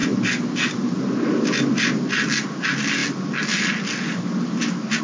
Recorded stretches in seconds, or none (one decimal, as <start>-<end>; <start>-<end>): 0.0-5.0